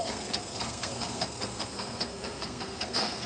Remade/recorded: remade